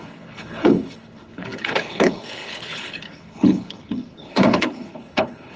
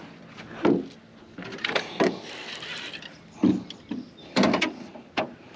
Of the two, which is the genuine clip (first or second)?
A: second